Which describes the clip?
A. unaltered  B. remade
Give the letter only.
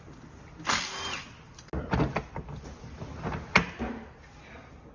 A